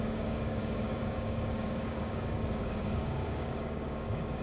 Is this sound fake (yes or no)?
yes